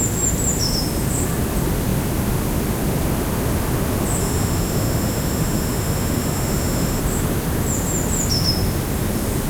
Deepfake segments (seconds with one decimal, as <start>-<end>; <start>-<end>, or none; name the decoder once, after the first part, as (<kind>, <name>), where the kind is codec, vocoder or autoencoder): 4.2-7.0 (autoencoder, DAC-VAE)